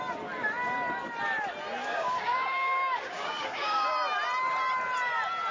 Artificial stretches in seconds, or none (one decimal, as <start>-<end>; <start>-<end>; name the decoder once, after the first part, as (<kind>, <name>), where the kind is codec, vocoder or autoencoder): 1.8-3.9 (codec, DAC)